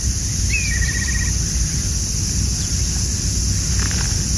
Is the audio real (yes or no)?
yes